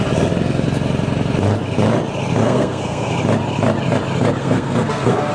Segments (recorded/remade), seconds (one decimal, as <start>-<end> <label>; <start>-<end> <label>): 0.0-2.4 recorded; 2.4-3.1 remade; 3.1-4.4 recorded; 4.4-5.3 remade